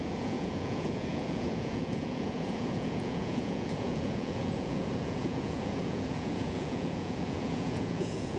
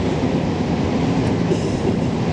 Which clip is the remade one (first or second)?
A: first